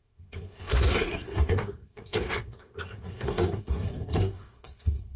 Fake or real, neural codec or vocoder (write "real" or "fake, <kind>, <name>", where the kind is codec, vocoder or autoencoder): fake, codec, SNAC